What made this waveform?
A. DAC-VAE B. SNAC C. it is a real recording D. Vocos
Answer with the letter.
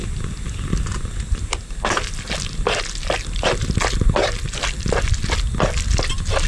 C